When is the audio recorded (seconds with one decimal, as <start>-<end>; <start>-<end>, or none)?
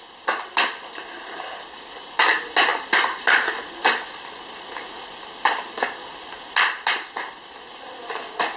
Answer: 0.0-8.6